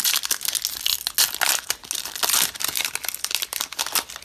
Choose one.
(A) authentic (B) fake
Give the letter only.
A